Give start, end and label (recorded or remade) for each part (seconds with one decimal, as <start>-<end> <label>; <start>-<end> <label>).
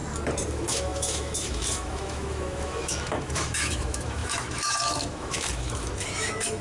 0.0-0.5 recorded; 0.5-6.6 remade